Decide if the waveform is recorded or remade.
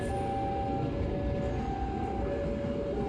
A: recorded